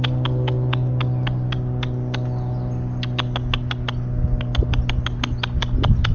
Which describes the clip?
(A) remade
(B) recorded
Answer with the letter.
B